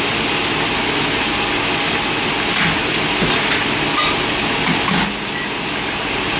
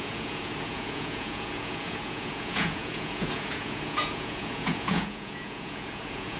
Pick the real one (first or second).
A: first